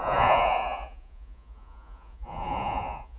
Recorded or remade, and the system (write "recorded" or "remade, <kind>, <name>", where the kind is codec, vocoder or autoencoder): remade, vocoder, Vocos